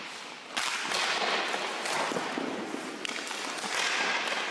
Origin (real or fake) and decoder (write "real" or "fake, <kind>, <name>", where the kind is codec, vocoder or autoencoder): real